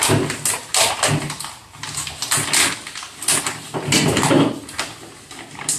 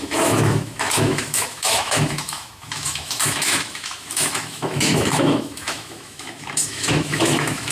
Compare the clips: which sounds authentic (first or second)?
first